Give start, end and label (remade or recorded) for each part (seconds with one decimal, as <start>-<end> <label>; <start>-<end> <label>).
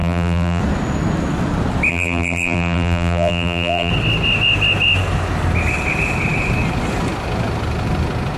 0.0-0.6 remade; 0.6-1.9 recorded; 1.9-3.9 remade; 3.9-8.4 recorded